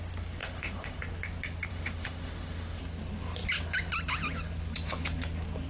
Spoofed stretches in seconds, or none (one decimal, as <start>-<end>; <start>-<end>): 0.4-1.0; 1.7-2.8